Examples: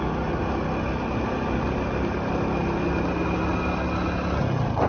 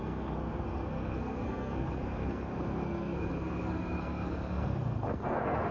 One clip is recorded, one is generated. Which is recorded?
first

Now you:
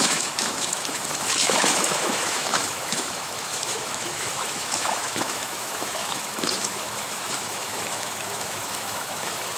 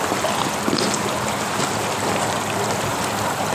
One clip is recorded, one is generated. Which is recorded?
second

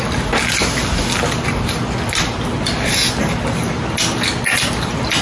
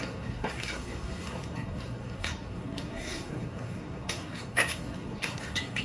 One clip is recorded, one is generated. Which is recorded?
first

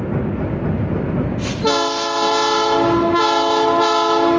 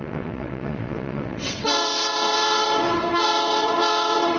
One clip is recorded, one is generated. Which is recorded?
first